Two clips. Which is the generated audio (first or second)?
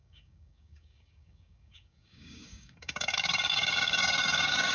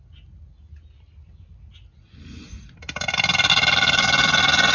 first